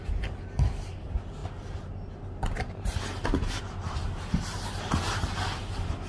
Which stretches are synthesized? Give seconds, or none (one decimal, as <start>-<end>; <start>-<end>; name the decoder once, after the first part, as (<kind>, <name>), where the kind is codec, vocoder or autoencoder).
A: 1.4-2.2 (vocoder, BigVGAN v2)